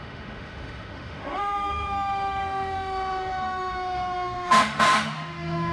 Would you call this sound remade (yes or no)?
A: yes